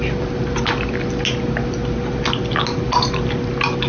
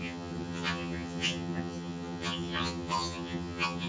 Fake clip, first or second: second